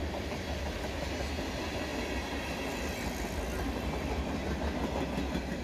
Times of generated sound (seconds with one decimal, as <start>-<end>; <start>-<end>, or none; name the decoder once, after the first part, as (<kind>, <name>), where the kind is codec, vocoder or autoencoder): 0.0-0.6 (vocoder, BigVGAN v2)